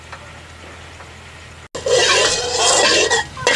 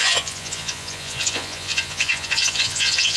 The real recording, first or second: first